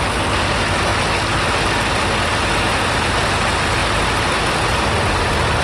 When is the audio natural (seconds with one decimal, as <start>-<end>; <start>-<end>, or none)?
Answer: 0.0-5.6

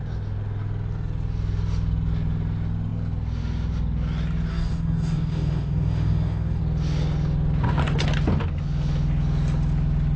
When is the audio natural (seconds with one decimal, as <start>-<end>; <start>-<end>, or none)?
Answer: 0.0-4.5; 6.6-10.2

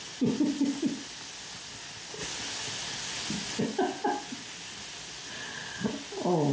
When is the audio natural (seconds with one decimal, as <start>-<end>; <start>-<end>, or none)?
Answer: 0.0-6.5

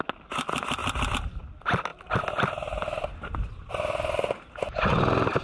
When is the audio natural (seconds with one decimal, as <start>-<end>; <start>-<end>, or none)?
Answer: 0.0-0.8; 1.4-1.9

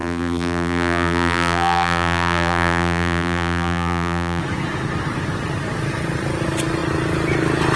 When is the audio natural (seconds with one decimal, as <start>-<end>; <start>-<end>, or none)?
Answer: 4.4-7.8

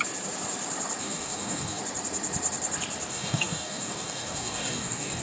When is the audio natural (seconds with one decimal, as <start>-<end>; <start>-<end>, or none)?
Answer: 0.0-1.0; 1.8-3.1

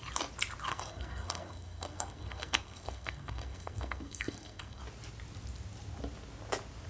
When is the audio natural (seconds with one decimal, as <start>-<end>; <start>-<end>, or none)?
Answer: 0.0-0.7; 4.8-6.9

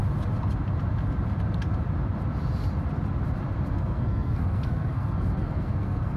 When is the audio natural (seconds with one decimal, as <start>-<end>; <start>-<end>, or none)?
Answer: 0.0-3.7